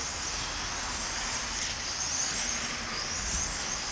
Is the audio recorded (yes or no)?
yes